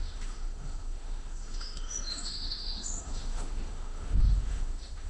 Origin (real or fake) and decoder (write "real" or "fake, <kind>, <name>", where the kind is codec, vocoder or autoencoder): fake, autoencoder, DAC-VAE